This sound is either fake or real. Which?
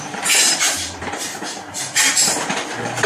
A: fake